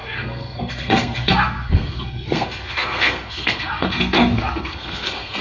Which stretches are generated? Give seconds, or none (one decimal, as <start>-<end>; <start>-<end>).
0.0-5.4